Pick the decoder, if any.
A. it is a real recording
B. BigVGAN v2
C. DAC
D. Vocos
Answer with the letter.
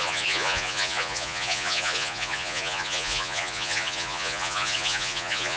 D